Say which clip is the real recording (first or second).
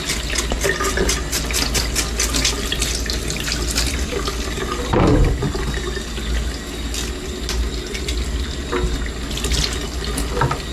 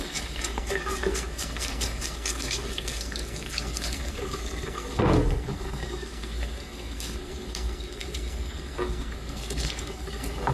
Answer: first